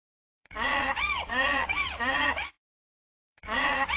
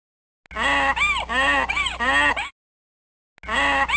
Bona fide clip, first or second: second